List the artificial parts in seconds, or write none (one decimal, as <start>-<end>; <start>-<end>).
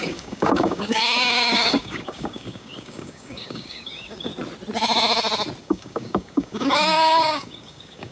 0.0-4.3; 5.6-8.1